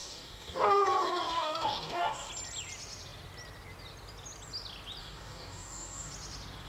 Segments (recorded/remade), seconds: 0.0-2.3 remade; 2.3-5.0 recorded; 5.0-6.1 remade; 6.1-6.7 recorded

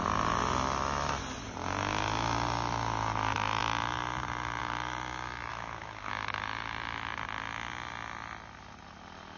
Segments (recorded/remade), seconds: 0.0-5.5 recorded; 5.5-6.1 remade; 6.1-9.4 recorded